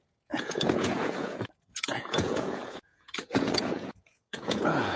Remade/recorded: remade